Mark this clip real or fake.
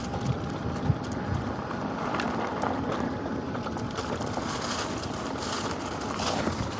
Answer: fake